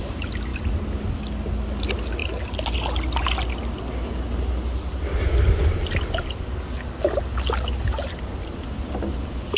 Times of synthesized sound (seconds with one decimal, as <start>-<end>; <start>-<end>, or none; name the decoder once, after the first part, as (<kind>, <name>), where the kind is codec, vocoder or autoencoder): none

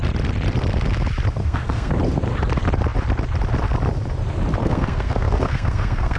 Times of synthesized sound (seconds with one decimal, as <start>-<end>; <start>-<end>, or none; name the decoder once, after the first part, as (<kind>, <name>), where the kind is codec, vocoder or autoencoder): 1.4-1.9 (codec, SNAC); 4.6-6.2

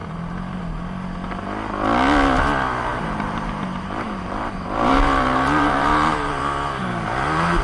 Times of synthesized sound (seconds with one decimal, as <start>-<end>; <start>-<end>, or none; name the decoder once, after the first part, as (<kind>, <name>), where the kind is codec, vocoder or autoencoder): 2.9-6.4 (vocoder, BigVGAN v2)

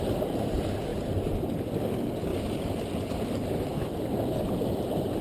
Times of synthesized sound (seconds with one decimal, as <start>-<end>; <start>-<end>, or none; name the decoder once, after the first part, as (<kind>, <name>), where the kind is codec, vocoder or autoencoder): none

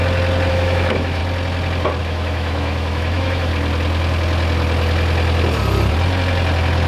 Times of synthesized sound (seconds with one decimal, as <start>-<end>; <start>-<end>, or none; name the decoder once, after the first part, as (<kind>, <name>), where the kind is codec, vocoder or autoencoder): 0.5-1.2 (autoencoder, DAC-VAE); 2.0-3.5

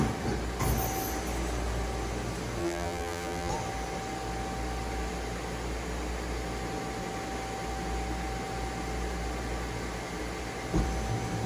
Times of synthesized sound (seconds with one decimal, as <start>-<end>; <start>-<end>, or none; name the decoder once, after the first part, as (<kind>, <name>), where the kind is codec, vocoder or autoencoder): 2.6-3.5 (vocoder, BigVGAN v2)

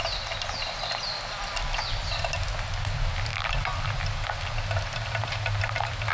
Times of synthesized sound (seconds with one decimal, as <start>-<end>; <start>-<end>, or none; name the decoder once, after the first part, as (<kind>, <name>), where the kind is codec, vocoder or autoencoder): none

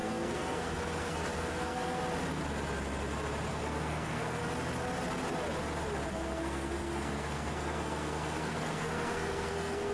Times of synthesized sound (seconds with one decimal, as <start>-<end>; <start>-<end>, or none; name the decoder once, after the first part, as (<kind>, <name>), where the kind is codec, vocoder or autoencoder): 0.0-2.0 (codec, SNAC); 3.5-4.4; 6.1-9.9